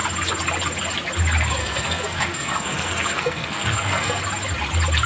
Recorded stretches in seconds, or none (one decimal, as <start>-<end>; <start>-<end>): 0.0-1.6; 4.2-5.1